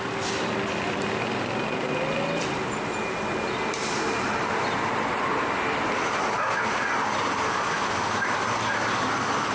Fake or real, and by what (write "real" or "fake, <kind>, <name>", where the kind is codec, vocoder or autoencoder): real